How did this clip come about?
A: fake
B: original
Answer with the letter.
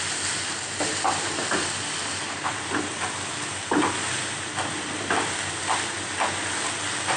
B